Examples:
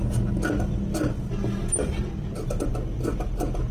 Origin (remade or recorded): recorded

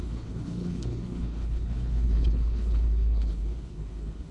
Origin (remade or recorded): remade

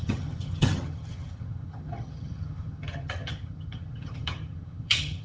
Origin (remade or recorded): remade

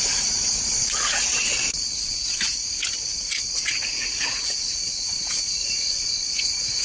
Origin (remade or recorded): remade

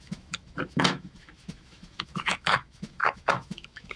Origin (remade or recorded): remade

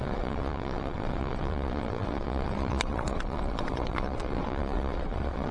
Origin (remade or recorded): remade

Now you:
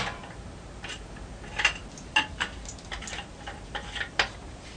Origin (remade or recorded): recorded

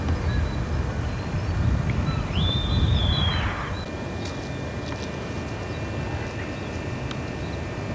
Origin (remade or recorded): recorded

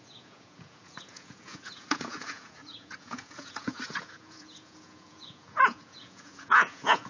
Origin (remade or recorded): remade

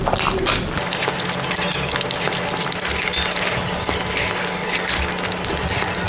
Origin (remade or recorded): recorded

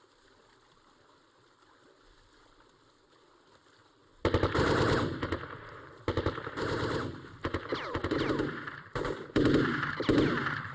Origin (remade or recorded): remade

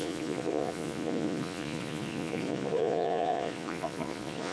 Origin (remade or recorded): remade